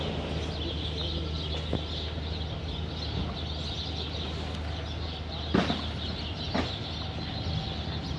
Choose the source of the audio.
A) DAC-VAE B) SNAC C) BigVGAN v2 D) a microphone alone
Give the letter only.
D